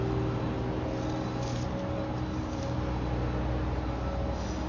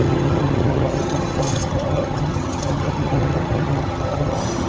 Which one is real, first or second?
first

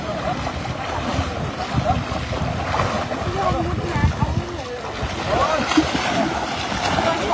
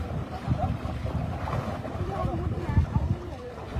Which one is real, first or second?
first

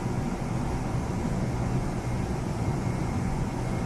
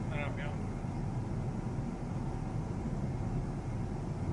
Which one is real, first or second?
second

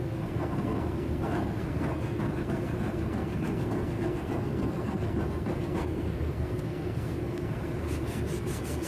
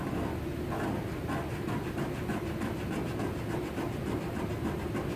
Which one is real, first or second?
second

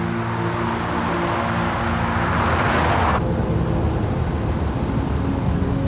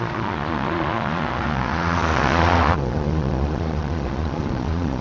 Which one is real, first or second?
first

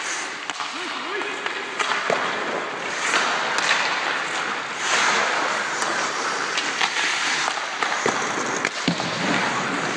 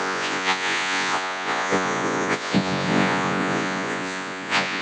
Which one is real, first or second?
first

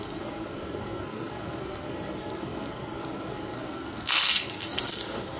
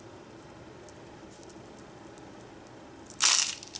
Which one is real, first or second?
second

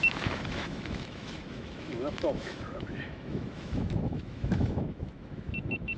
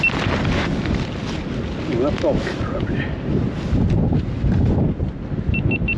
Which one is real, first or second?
second